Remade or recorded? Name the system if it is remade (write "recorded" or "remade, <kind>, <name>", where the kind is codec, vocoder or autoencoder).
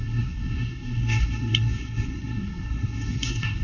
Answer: remade, codec, SNAC